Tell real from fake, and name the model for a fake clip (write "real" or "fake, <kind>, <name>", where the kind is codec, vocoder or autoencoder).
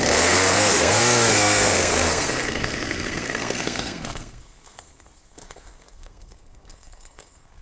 fake, codec, SNAC